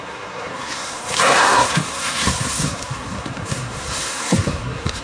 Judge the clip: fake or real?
fake